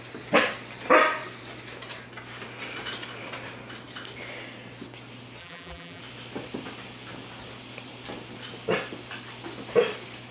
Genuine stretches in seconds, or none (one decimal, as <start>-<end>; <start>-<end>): 0.0-5.4; 6.0-10.3